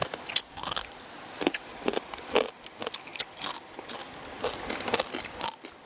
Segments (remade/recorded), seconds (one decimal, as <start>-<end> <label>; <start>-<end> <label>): 0.0-5.9 recorded